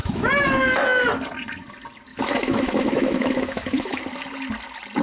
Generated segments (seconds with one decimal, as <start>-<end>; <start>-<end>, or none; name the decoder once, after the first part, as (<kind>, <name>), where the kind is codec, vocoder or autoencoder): 0.0-0.5 (autoencoder, DAC-VAE); 2.1-4.0